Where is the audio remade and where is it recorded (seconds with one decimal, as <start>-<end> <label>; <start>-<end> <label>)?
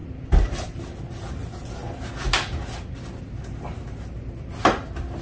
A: 0.0-0.8 remade; 0.8-5.2 recorded